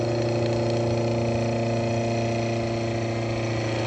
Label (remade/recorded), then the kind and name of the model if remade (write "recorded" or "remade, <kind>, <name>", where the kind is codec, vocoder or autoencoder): recorded